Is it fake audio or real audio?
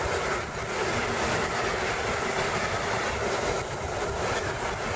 real